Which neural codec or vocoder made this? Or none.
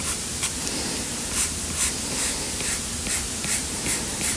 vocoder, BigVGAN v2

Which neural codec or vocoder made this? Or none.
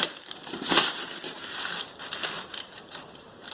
vocoder, BigVGAN v2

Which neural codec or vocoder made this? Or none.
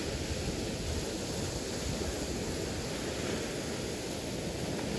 none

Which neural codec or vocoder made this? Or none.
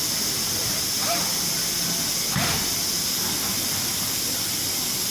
none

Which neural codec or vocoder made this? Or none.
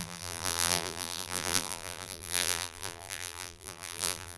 vocoder, BigVGAN v2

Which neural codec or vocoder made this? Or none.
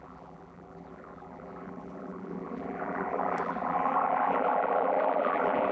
vocoder, BigVGAN v2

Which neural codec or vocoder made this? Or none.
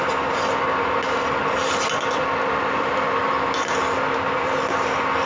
none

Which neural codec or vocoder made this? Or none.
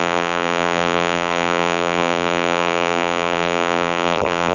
vocoder, BigVGAN v2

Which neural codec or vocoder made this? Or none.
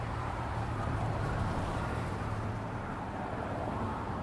vocoder, BigVGAN v2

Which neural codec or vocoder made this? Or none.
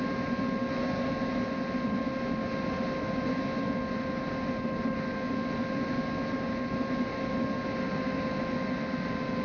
none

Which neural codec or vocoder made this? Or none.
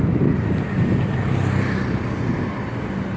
none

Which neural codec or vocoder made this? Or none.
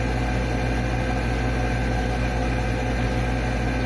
none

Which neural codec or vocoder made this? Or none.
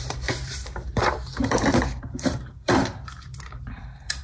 vocoder, BigVGAN v2